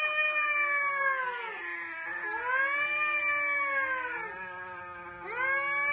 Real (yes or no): yes